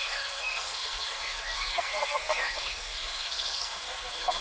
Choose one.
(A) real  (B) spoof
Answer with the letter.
B